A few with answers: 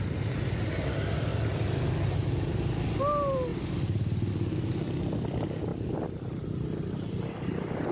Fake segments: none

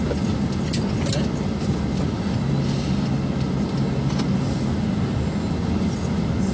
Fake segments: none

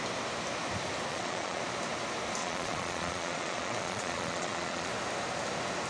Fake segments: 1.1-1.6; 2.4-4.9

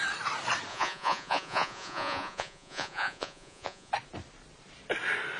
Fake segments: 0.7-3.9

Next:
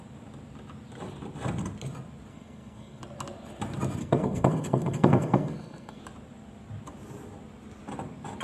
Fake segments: 2.3-3.0; 4.0-6.0

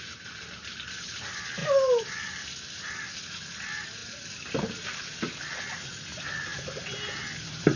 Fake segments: none